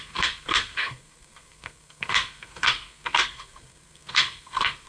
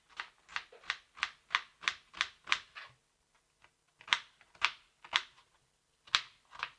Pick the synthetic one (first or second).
first